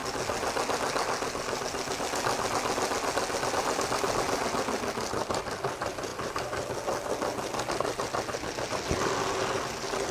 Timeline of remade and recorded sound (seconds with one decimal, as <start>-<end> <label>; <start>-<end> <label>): 0.0-10.1 recorded